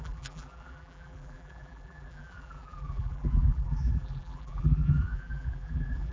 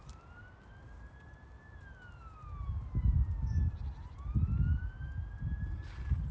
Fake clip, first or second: first